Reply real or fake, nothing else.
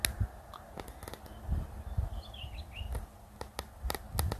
real